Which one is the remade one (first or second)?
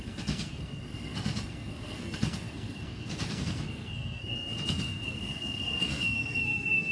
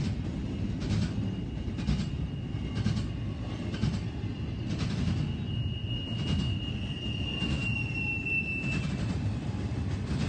first